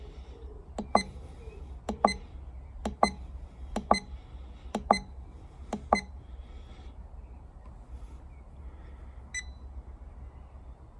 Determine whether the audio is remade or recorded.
recorded